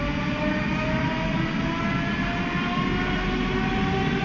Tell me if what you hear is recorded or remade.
recorded